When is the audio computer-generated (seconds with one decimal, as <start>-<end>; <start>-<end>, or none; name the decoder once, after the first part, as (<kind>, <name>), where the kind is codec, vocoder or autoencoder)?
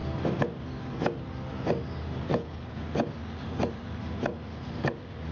2.3-2.8 (codec, HILCodec)